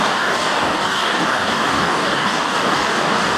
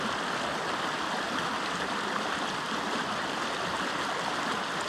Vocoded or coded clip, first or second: first